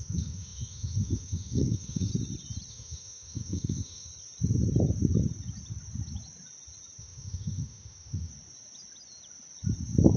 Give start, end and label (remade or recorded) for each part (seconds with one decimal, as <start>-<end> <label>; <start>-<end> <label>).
0.0-2.1 remade; 2.1-2.7 recorded; 2.7-4.1 remade; 4.1-7.0 recorded; 7.0-8.3 remade; 8.3-10.2 recorded